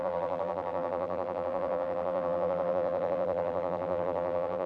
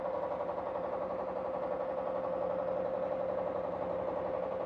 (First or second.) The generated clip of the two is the first